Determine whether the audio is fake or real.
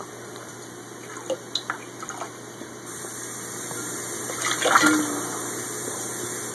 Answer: real